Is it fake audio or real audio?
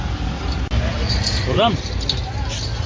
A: real